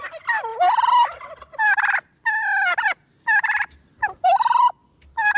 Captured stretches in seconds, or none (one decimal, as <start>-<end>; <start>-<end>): 0.0-5.4